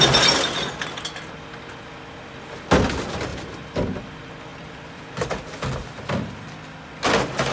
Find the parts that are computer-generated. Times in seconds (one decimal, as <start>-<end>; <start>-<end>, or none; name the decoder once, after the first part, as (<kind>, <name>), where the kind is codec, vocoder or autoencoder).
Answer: 3.3-4.0 (vocoder, BigVGAN v2); 4.5-5.0